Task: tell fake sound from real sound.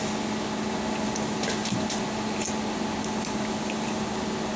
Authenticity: real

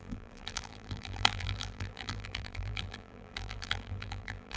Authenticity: fake